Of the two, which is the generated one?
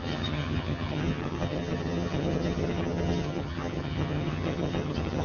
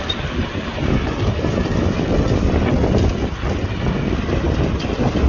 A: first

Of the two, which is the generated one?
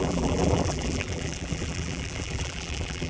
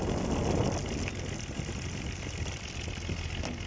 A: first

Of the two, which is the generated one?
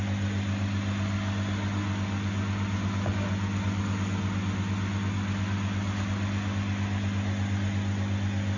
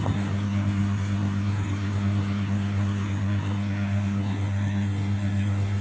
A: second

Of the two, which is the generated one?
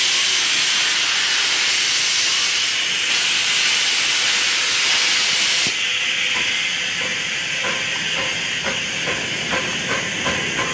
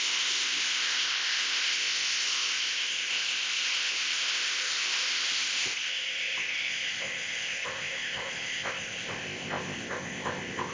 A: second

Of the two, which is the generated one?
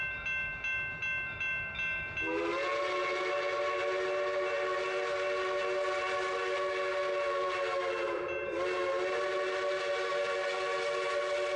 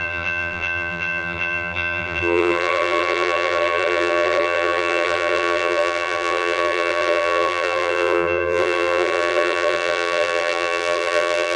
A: second